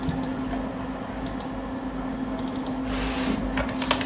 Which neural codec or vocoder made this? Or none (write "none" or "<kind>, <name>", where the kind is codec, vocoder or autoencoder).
none